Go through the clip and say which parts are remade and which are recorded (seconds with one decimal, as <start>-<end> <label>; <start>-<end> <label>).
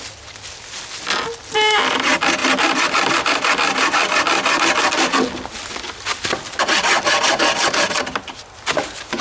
0.0-9.2 recorded